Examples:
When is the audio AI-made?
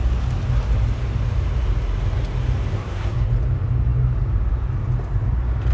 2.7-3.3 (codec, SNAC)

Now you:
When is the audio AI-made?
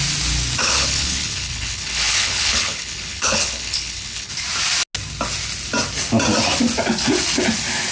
0.6-4.3 (codec, HILCodec)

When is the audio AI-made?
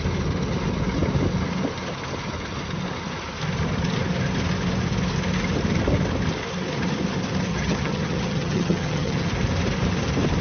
7.5-9.3 (vocoder, HiFi-GAN)